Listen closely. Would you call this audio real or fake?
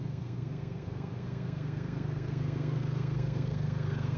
fake